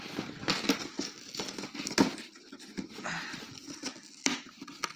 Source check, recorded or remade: recorded